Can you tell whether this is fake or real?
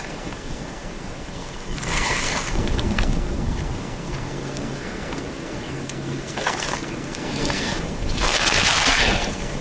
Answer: fake